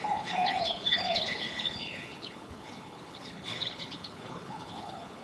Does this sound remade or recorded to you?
remade